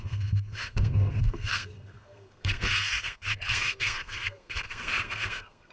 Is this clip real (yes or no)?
no